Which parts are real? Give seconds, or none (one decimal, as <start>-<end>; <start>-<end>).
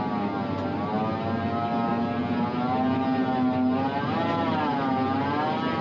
0.0-5.8